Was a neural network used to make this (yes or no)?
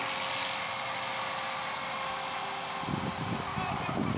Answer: no